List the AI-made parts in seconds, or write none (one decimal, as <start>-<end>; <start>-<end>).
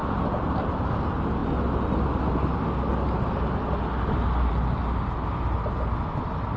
none